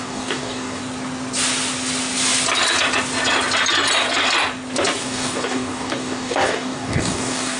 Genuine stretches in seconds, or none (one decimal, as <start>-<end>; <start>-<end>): 0.8-5.0